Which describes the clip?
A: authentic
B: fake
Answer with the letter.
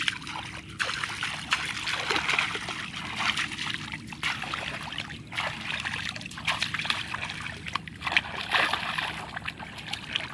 A